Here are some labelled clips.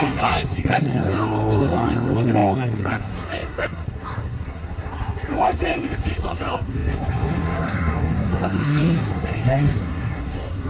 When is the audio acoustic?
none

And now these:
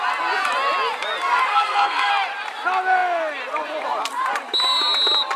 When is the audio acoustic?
0.0-1.5; 2.1-5.4